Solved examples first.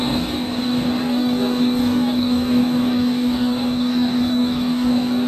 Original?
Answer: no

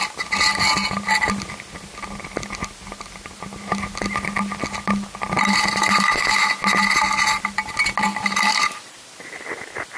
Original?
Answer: yes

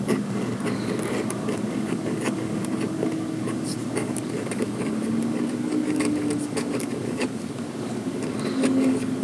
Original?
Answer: no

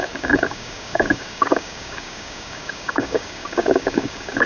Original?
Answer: no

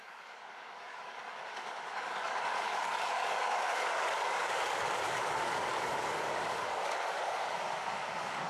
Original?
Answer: no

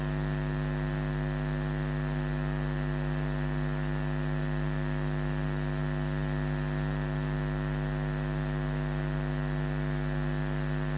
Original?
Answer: yes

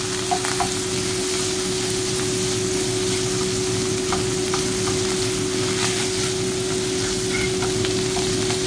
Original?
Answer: yes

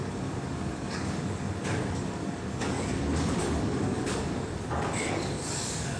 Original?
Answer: no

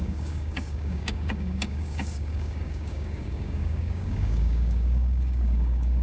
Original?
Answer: no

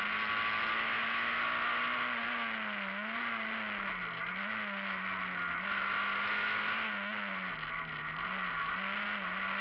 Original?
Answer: yes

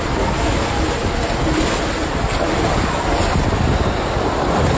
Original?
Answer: yes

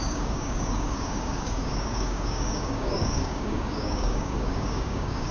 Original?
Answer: no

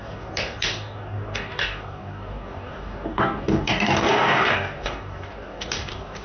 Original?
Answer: no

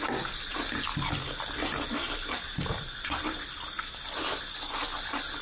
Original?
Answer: yes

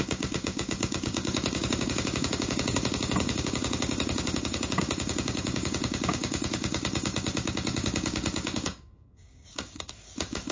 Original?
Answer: no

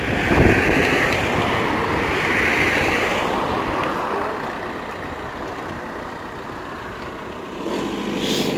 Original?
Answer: yes